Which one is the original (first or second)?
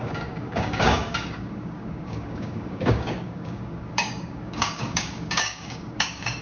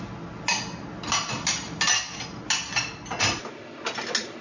second